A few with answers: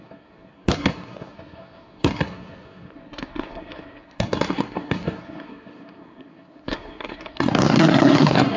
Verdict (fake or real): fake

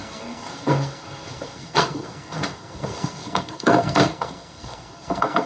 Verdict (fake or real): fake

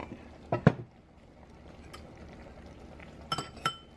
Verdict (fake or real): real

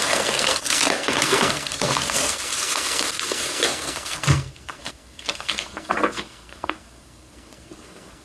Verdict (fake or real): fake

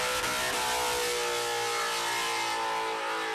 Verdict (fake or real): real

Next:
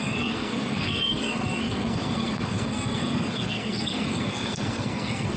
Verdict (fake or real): fake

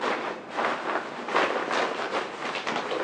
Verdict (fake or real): real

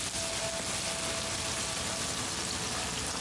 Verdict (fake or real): real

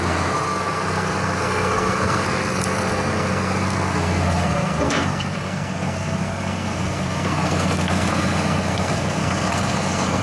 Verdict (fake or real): fake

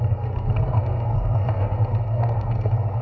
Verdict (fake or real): fake